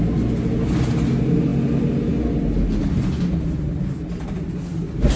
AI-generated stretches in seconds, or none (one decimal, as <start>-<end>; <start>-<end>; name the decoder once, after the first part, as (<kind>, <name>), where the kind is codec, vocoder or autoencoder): none